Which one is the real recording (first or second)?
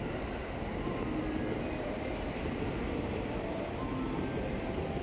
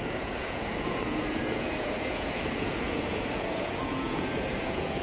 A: first